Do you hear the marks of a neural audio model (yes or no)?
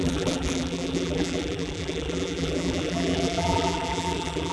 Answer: yes